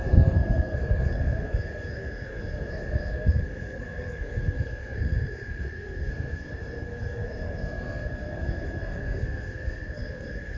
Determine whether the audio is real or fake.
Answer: fake